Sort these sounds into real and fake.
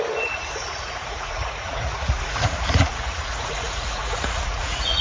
fake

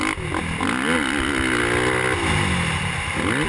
real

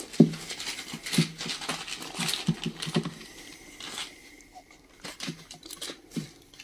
real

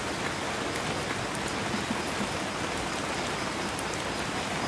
real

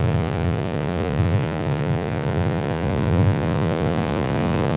fake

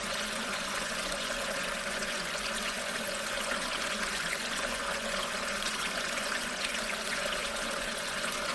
fake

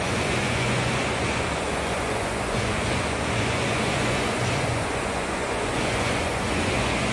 fake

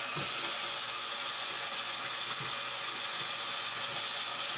fake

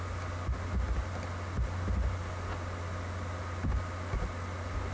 real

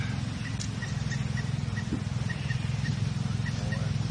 real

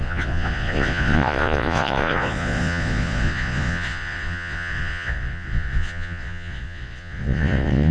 fake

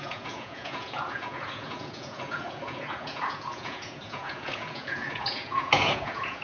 fake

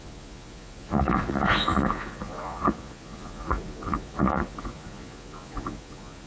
fake